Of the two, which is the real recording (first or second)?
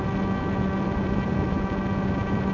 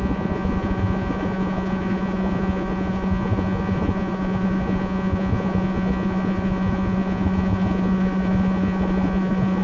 first